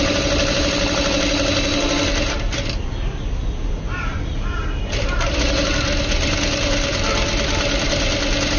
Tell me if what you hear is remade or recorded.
recorded